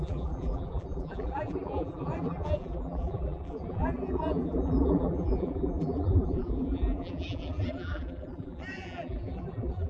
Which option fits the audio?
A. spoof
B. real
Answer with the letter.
A